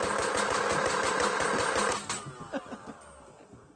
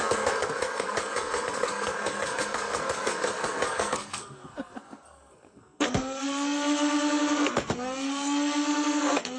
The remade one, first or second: second